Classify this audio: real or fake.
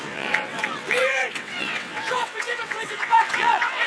fake